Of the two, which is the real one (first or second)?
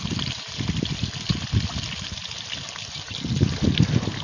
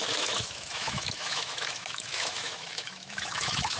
first